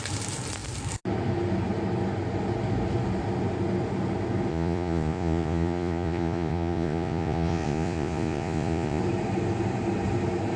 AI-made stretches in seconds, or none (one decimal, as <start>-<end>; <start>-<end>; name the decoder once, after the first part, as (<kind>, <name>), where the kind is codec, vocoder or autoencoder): 4.5-9.0 (vocoder, Vocos)